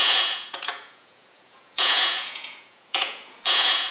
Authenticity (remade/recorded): remade